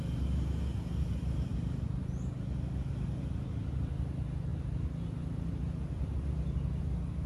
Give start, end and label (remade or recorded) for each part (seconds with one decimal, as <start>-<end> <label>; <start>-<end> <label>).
0.0-1.5 recorded; 1.5-2.0 remade; 2.0-7.3 recorded